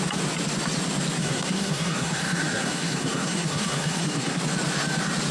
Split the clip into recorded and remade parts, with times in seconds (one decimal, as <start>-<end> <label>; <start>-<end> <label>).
0.0-1.2 recorded; 1.2-4.4 remade; 4.4-5.3 recorded